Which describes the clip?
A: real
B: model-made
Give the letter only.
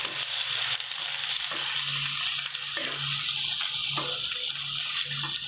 A